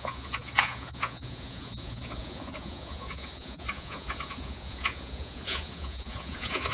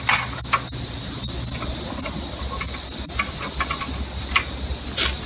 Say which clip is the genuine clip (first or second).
second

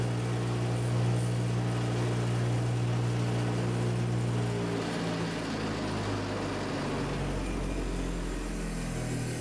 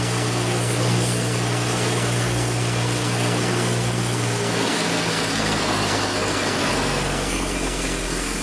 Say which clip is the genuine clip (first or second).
first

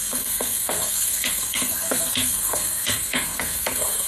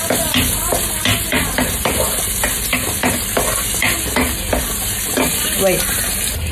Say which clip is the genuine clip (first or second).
second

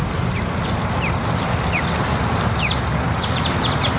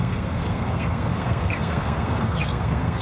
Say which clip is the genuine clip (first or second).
first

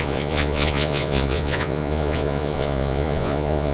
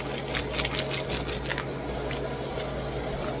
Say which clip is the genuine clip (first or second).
second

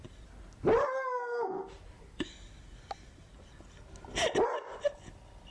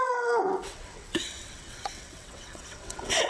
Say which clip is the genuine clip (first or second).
first